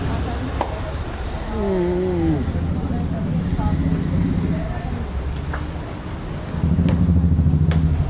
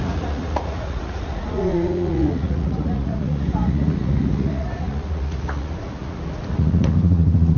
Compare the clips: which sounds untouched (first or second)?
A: first